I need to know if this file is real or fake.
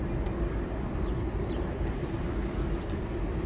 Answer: real